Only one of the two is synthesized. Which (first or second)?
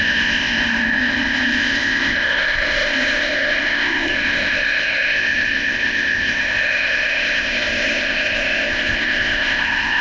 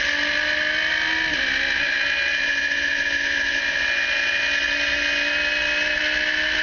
first